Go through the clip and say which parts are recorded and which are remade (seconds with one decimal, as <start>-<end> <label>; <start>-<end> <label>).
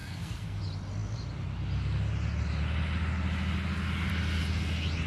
0.0-0.6 remade; 0.6-5.1 recorded